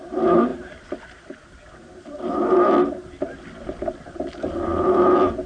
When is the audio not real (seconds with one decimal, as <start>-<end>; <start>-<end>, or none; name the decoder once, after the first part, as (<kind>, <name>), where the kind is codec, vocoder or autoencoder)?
none